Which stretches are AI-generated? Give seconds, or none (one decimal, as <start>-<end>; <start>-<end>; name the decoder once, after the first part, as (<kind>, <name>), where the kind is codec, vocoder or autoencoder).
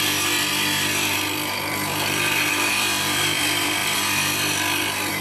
0.0-5.2 (vocoder, BigVGAN v2)